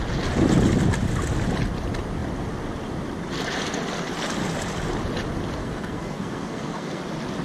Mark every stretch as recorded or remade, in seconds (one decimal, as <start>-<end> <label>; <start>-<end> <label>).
0.0-5.6 recorded; 5.6-7.0 remade; 7.0-7.4 recorded